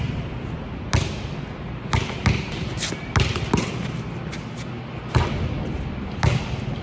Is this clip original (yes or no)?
yes